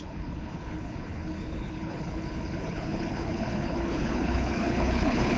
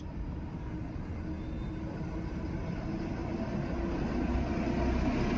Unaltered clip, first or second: second